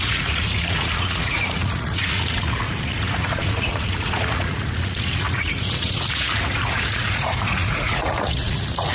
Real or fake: fake